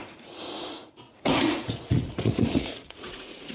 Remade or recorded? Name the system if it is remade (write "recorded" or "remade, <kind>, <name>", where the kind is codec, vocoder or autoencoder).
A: remade, vocoder, Vocos